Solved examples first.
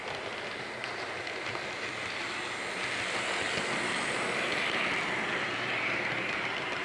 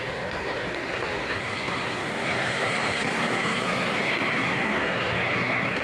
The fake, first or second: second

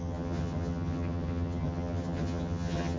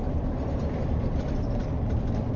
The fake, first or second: first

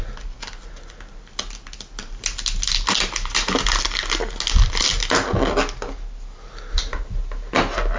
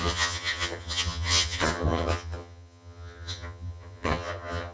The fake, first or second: second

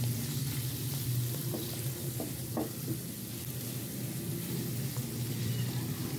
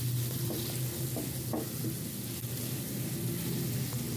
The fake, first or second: first